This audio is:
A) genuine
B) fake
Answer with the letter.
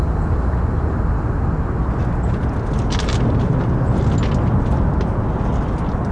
A